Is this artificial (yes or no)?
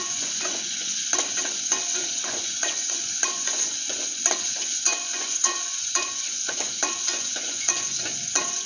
yes